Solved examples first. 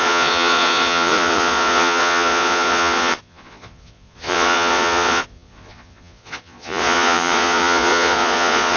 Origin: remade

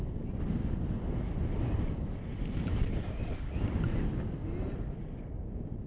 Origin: recorded